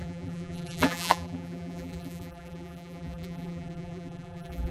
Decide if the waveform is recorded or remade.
remade